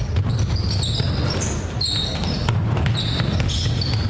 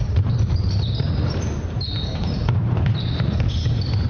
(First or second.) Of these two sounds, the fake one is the second